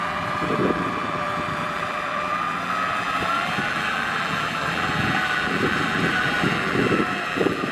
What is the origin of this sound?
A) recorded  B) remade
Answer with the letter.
B